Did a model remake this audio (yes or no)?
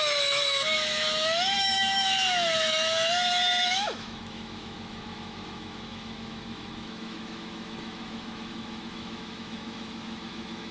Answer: yes